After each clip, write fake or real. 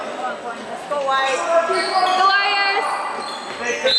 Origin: real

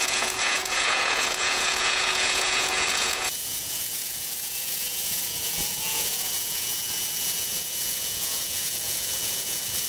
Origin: fake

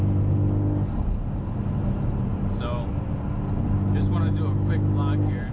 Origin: real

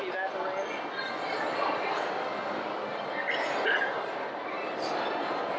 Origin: real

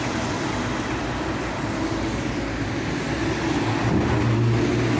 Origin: real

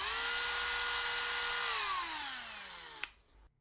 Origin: real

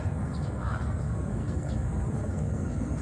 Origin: fake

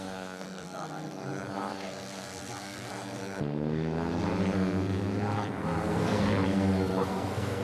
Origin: fake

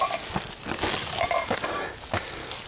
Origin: real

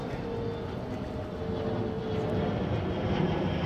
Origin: real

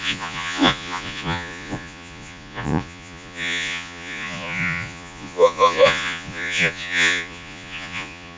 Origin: fake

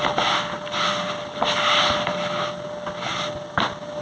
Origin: real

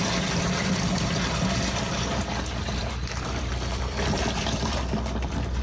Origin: fake